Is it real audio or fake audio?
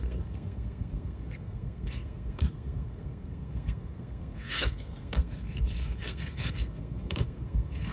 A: fake